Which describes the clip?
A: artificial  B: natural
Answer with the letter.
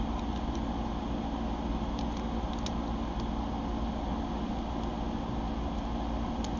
B